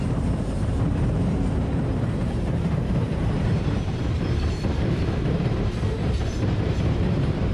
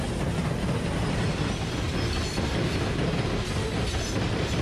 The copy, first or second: first